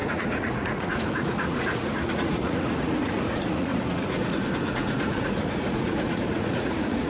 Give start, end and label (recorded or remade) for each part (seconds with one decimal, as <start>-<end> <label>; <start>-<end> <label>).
0.0-7.1 remade